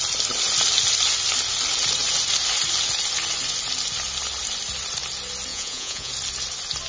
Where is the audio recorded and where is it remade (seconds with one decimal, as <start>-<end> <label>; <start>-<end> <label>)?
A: 0.0-5.5 recorded; 5.5-6.1 remade; 6.1-6.9 recorded